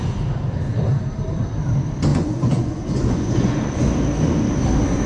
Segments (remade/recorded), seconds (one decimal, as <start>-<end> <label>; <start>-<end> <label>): 0.0-2.1 recorded; 2.1-3.9 remade; 3.9-5.1 recorded